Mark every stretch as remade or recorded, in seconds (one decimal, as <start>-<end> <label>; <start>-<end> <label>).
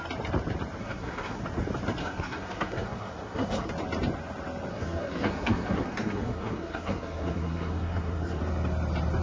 0.0-0.8 recorded; 0.8-1.4 remade; 1.4-2.0 recorded; 2.0-3.7 remade; 3.7-4.7 recorded; 4.7-8.4 remade; 8.4-9.2 recorded